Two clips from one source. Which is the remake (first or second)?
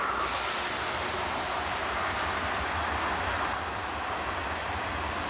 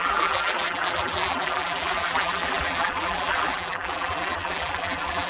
second